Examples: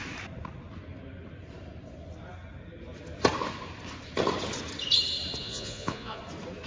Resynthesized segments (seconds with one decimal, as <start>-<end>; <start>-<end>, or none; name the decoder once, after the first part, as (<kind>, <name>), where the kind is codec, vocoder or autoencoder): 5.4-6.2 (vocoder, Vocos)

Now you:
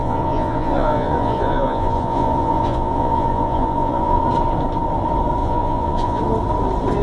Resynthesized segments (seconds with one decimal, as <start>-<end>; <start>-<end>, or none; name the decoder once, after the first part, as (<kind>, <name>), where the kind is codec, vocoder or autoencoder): 0.0-4.2 (vocoder, Vocos); 5.4-6.2

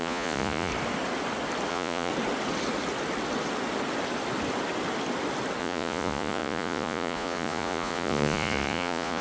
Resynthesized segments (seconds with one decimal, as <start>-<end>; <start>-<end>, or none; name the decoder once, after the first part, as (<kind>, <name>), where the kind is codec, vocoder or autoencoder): 0.0-0.7 (vocoder, Vocos); 1.7-2.1; 5.6-9.2

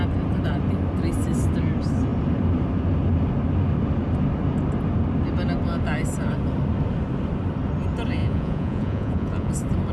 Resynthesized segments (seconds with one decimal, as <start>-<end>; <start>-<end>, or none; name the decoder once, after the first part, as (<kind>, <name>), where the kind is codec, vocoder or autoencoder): 8.2-9.5 (vocoder, Vocos)

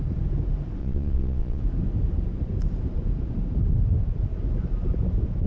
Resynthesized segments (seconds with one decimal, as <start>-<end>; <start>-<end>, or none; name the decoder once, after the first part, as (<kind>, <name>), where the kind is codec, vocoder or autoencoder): 0.8-1.6 (vocoder, Vocos)

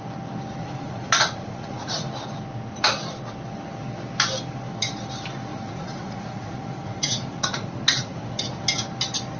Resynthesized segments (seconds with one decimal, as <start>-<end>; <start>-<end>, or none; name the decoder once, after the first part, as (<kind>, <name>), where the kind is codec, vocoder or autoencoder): 0.6-2.0 (vocoder, Vocos); 5.5-8.2

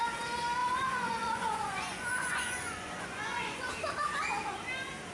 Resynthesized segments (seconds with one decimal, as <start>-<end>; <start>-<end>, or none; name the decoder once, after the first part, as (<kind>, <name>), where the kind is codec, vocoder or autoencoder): 0.6-3.7 (vocoder, Vocos)